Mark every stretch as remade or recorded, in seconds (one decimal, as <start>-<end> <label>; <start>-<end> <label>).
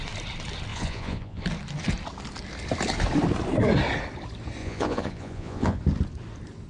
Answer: 0.0-0.7 recorded; 0.7-1.4 remade; 1.4-4.6 recorded; 4.6-5.8 remade; 5.8-6.7 recorded